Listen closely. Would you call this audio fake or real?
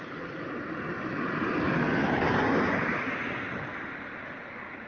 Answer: real